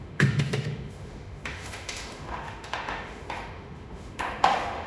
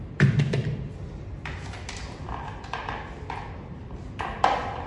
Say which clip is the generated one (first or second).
first